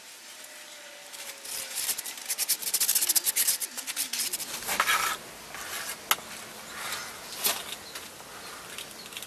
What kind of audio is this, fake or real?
real